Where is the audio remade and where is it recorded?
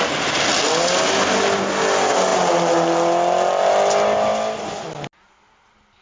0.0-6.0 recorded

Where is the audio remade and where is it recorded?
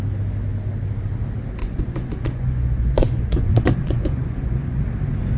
0.0-1.6 recorded; 1.6-4.8 remade; 4.8-5.4 recorded